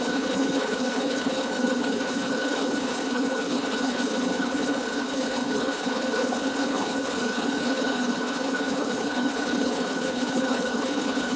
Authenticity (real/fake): fake